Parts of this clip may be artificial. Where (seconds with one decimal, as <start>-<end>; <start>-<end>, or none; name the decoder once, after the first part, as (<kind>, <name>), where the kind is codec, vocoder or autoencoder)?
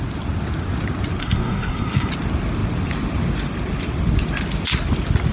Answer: 1.2-2.1 (codec, SNAC)